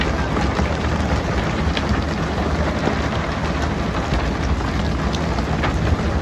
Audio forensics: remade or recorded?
recorded